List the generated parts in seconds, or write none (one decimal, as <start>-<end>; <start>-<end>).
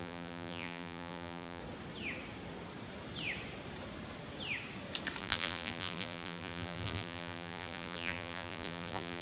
0.0-1.6; 5.2-9.2